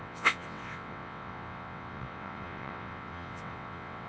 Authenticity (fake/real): fake